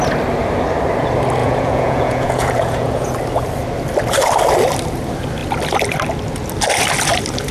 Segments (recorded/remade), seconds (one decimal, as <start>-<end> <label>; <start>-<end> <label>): 0.0-1.4 recorded; 1.4-3.1 remade; 3.1-7.5 recorded